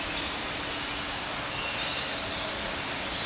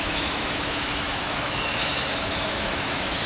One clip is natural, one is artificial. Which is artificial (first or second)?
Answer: second